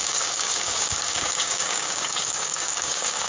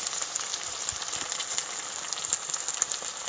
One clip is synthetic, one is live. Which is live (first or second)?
second